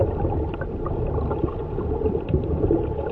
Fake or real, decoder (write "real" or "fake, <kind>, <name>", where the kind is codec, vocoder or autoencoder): real